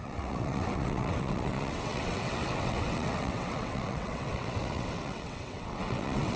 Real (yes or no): no